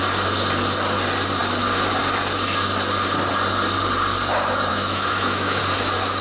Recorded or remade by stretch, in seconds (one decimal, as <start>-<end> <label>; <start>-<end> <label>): 0.0-4.7 recorded; 4.7-5.6 remade; 5.6-6.2 recorded